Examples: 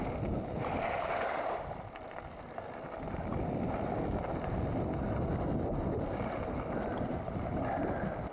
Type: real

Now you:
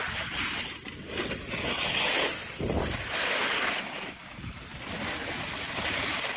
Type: fake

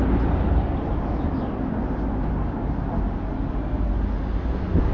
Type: real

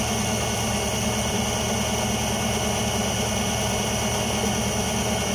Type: real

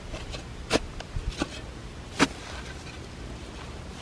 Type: real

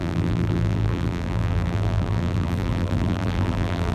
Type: fake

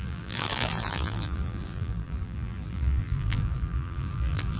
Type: fake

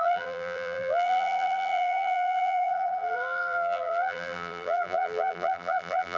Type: fake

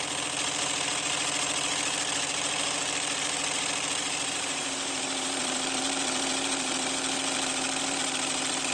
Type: fake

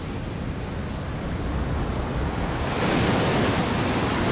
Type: real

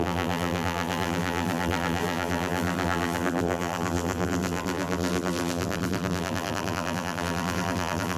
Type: fake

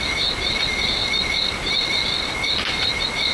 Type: fake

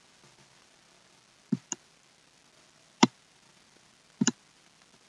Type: real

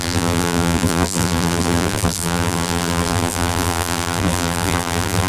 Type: fake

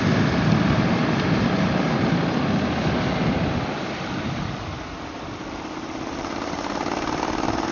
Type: real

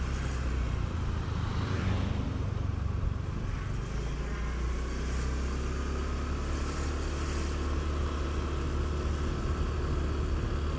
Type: real